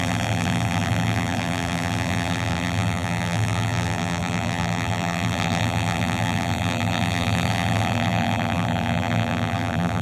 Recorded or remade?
remade